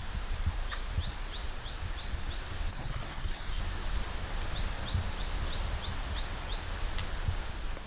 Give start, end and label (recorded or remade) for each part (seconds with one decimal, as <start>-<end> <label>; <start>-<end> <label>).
0.0-2.7 recorded; 2.7-3.6 remade; 3.6-7.9 recorded